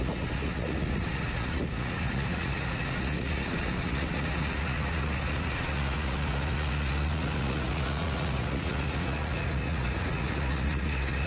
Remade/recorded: remade